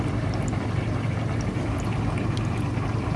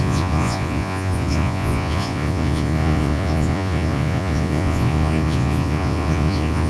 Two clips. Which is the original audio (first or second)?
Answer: first